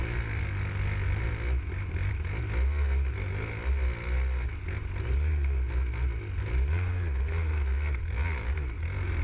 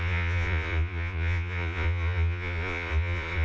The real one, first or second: first